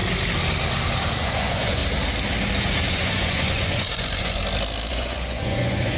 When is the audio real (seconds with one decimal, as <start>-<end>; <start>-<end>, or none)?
0.0-1.2; 1.8-2.9; 4.4-4.9